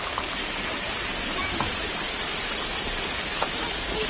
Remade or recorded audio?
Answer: recorded